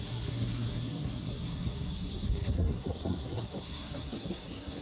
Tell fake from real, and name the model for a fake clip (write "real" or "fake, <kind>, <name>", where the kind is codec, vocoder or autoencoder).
fake, codec, SNAC